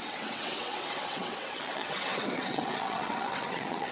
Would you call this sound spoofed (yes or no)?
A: yes